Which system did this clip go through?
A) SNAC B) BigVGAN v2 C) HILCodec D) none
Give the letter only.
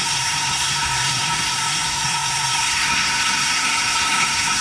A